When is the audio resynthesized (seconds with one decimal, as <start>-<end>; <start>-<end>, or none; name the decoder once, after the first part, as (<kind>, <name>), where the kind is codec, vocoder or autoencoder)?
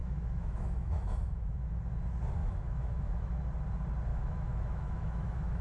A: 0.0-1.7 (autoencoder, DAC-VAE); 2.4-3.4; 4.1-5.6